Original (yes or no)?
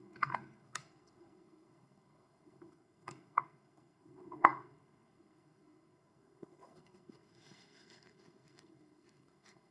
no